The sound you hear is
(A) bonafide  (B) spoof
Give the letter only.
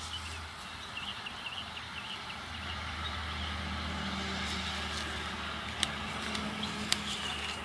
A